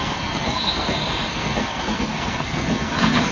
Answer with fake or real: fake